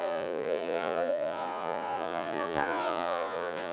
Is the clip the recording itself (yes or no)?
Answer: no